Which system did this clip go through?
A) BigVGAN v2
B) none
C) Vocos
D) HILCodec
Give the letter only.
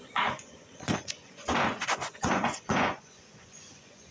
C